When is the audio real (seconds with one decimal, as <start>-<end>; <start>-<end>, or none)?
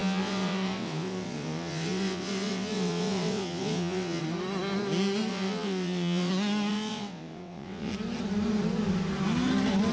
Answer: 4.2-5.3; 6.3-6.7; 7.9-9.9